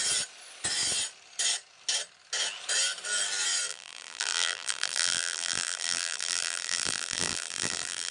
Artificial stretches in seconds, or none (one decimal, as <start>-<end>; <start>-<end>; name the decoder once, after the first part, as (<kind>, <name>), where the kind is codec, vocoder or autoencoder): 3.7-8.1 (vocoder, BigVGAN v2)